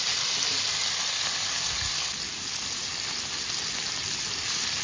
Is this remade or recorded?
recorded